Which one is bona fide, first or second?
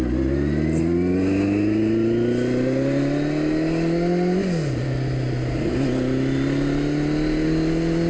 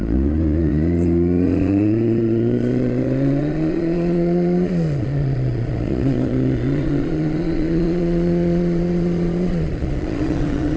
first